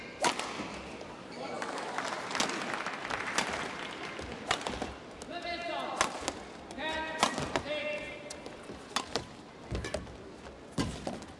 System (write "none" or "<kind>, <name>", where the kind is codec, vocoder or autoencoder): none